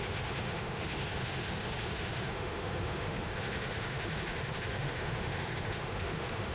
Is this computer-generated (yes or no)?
yes